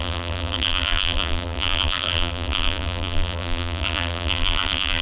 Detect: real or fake fake